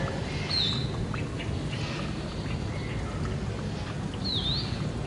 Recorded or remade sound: recorded